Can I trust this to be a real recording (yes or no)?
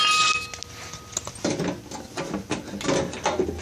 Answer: yes